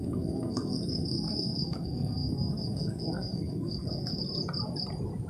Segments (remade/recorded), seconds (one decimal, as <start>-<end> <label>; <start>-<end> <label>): 0.0-4.2 remade; 4.2-5.3 recorded